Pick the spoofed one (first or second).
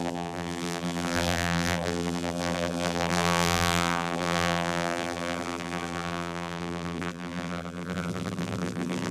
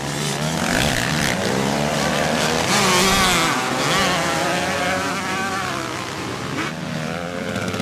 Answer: first